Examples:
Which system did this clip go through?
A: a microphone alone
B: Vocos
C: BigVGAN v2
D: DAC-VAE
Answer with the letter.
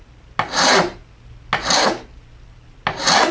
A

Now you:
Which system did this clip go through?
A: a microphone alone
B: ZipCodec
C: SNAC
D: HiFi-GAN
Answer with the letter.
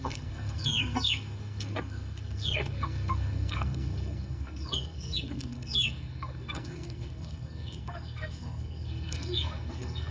C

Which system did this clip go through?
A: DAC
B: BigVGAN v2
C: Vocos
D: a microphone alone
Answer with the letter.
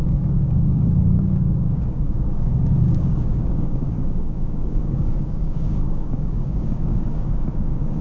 A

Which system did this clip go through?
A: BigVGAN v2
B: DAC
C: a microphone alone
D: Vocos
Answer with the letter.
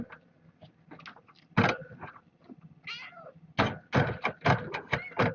C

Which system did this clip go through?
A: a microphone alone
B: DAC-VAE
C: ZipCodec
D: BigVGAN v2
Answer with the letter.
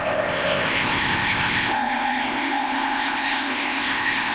C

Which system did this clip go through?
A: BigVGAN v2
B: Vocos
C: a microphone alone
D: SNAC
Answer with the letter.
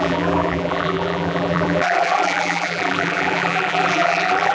A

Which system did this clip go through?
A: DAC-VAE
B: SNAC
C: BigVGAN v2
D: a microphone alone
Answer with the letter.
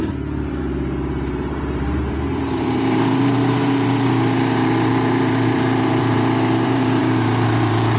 C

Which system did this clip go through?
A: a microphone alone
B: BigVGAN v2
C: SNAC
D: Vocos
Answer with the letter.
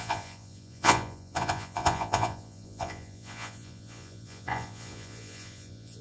D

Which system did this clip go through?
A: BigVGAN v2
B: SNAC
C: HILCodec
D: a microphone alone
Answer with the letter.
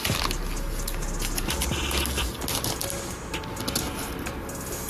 D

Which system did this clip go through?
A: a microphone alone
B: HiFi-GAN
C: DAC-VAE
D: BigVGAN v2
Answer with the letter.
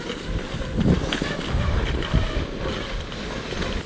A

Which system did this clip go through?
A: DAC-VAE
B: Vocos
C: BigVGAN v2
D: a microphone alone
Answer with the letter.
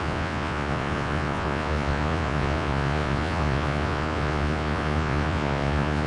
B